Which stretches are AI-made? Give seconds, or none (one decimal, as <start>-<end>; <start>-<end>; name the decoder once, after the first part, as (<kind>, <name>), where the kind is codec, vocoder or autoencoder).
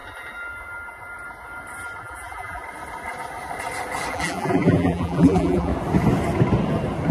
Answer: 2.0-2.6 (vocoder, BigVGAN v2); 4.1-5.7